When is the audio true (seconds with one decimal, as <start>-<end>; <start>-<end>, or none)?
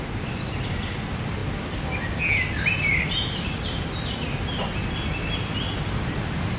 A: 0.0-6.6